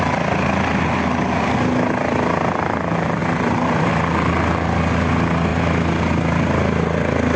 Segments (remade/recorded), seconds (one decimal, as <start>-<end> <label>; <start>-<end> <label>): 0.0-3.2 recorded; 3.2-3.9 remade; 3.9-7.4 recorded